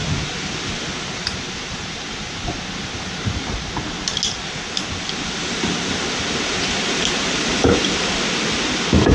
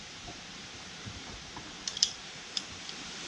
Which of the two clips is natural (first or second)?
first